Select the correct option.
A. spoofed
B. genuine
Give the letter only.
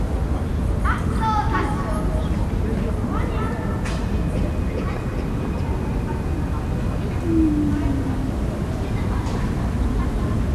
B